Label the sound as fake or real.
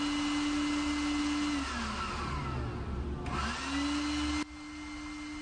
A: real